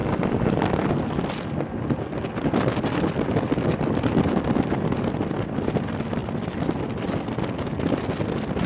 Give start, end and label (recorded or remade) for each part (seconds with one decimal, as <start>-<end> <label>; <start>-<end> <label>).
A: 0.0-8.7 recorded